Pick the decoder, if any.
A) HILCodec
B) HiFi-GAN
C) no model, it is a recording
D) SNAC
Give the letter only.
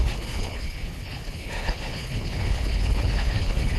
A